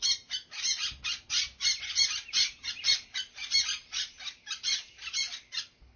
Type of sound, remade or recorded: recorded